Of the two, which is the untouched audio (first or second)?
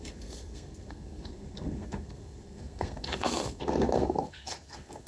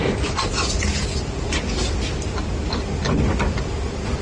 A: second